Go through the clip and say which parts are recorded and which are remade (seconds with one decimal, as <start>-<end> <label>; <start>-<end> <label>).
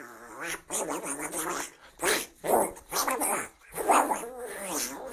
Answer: 0.0-3.0 recorded; 3.0-3.6 remade; 3.6-5.1 recorded